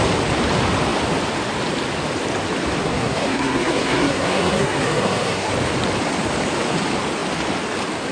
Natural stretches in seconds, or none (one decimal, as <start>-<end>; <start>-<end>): 0.0-2.8; 5.5-8.1